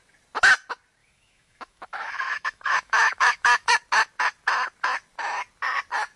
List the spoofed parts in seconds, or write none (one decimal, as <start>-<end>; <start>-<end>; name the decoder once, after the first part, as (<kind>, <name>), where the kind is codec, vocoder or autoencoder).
1.0-3.7 (autoencoder, DAC-VAE)